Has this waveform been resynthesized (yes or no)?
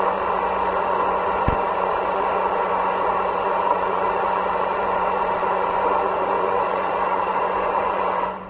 yes